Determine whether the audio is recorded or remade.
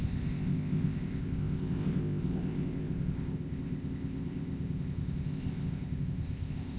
remade